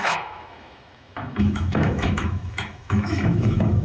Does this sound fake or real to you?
fake